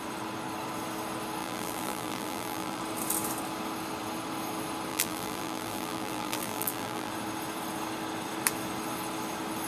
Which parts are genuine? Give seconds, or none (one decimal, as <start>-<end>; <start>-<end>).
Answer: 0.0-1.4; 2.8-4.9; 7.1-9.7